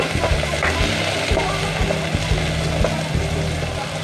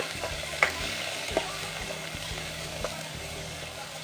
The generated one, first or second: second